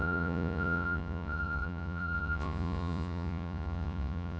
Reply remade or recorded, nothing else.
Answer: remade